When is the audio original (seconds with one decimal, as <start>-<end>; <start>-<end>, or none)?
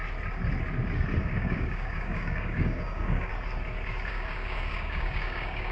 0.0-1.2; 3.3-4.1